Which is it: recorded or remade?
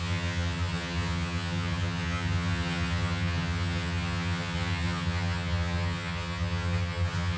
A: remade